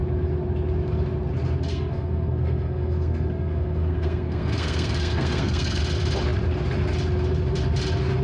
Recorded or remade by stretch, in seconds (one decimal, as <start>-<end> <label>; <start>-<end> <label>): 0.0-1.7 recorded; 1.7-5.8 remade; 5.8-8.2 recorded